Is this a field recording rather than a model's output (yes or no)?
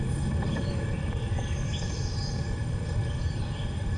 no